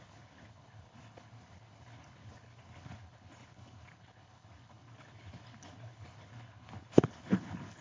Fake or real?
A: fake